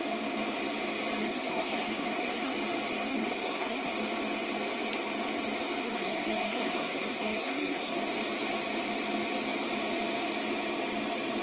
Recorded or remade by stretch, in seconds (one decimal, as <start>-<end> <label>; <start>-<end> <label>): 0.0-1.2 recorded; 1.2-2.5 remade; 2.5-3.1 recorded; 3.1-3.9 remade; 3.9-5.8 recorded; 5.8-8.0 remade; 8.0-11.4 recorded